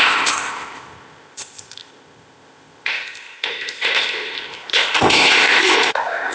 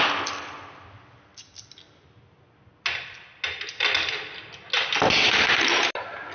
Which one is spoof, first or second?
first